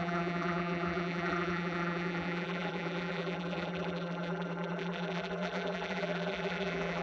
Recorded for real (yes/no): no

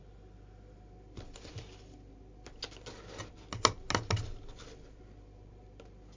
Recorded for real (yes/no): yes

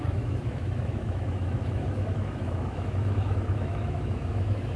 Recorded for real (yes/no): no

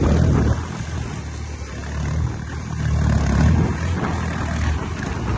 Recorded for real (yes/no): yes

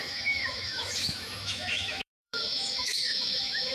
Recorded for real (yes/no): no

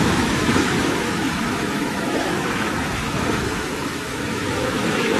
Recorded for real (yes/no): no